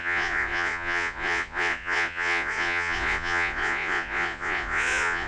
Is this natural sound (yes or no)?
no